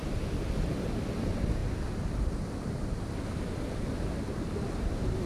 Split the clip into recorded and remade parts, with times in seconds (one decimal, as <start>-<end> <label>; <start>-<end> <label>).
0.0-5.3 recorded